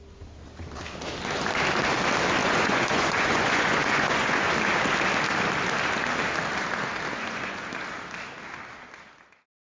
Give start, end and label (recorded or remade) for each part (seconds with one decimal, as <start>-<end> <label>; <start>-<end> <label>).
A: 0.0-2.4 recorded; 2.4-4.5 remade; 4.5-7.2 recorded; 7.2-7.7 remade; 7.7-9.7 recorded